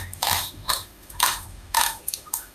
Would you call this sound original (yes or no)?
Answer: no